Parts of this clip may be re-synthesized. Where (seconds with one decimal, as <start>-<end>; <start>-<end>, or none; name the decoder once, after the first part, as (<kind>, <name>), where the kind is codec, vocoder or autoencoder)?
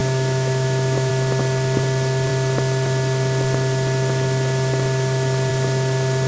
0.0-1.1 (autoencoder, DAC-VAE)